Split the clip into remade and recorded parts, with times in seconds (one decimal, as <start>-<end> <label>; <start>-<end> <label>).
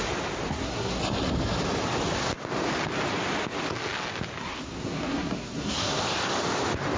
0.0-0.5 recorded; 0.5-1.0 remade; 1.0-4.4 recorded; 4.4-6.0 remade; 6.0-7.0 recorded